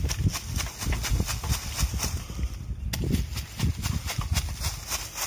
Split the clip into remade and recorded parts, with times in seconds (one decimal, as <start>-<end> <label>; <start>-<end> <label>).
0.0-1.1 recorded; 1.1-2.8 remade; 2.8-3.7 recorded; 3.7-4.4 remade; 4.4-5.3 recorded